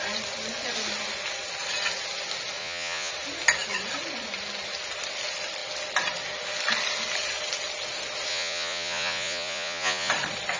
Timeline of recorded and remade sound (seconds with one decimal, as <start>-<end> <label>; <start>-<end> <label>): 0.0-2.6 recorded; 2.6-3.1 remade; 3.1-8.3 recorded; 8.3-10.1 remade; 10.1-10.6 recorded